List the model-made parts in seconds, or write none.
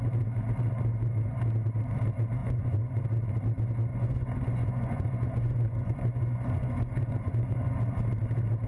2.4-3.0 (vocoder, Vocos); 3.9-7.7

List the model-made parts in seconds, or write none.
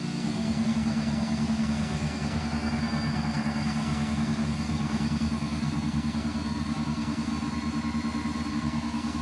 0.0-7.3 (codec, SNAC); 8.5-9.2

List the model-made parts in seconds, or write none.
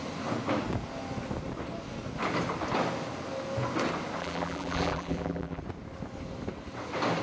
4.2-5.6 (vocoder, BigVGAN v2)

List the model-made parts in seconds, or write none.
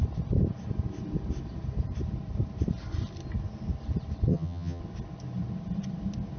4.3-4.8 (vocoder, HiFi-GAN)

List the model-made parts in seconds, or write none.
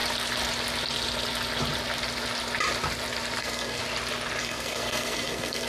3.4-3.8 (codec, SNAC); 4.4-5.7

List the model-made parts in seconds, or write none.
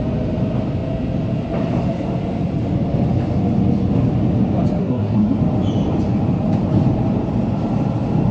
4.8-5.4 (codec, SNAC)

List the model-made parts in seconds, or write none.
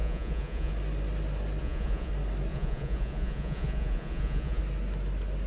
0.0-0.7 (vocoder, Vocos); 1.6-2.1; 2.5-4.6